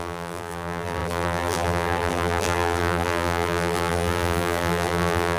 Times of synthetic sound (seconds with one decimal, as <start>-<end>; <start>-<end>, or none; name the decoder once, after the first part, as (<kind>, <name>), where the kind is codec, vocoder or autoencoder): 0.0-5.4 (vocoder, BigVGAN v2)